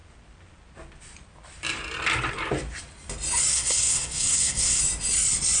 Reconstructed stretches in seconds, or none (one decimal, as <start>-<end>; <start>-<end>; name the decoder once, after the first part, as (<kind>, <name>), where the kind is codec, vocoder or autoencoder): 3.5-4.8 (codec, SNAC)